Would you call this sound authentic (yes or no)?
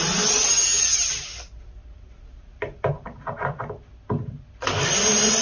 yes